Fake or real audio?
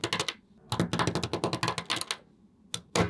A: real